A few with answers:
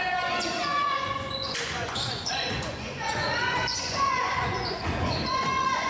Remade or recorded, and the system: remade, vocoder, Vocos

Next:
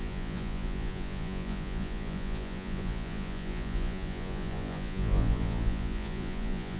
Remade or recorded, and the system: remade, vocoder, Vocos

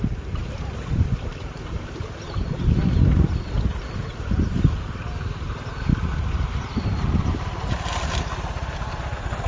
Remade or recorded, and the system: recorded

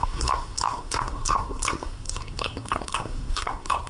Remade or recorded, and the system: remade, codec, SNAC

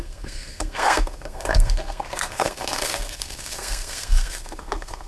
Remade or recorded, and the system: remade, codec, SNAC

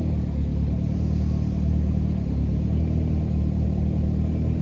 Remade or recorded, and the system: recorded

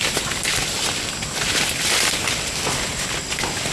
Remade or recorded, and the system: recorded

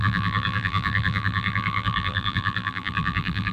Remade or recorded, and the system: remade, vocoder, BigVGAN v2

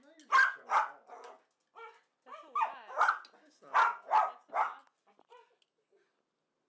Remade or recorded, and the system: recorded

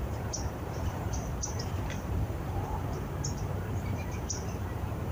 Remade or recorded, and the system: remade, vocoder, BigVGAN v2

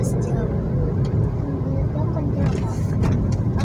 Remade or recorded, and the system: recorded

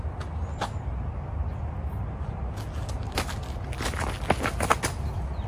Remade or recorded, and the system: recorded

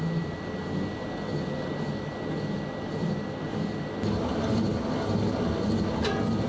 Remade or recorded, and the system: recorded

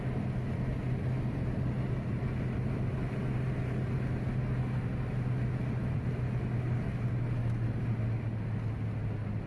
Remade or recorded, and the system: recorded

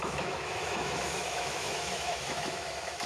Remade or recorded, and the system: remade, autoencoder, DAC-VAE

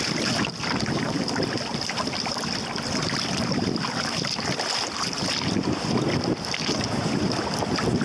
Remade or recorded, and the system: recorded